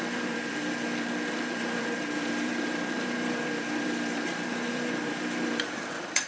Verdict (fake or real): fake